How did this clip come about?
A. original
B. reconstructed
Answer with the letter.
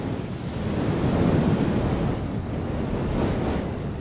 A